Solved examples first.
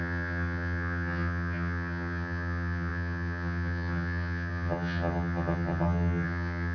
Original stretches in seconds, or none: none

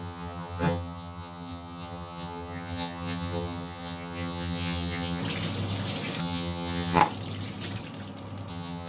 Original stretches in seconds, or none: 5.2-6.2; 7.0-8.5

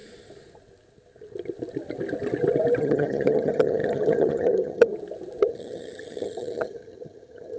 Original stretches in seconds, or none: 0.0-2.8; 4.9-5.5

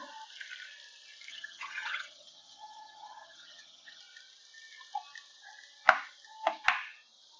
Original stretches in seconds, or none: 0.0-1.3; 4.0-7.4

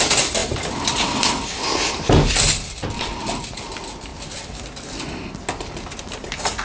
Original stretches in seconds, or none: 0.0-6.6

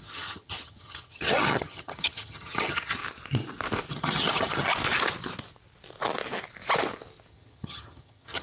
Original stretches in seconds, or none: 3.0-3.9; 4.7-7.3

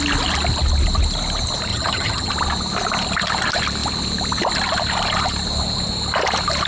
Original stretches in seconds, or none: 0.0-1.7; 2.3-6.7

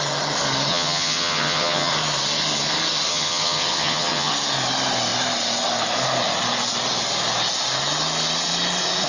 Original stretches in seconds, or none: 0.0-0.7; 1.9-3.1; 4.3-9.1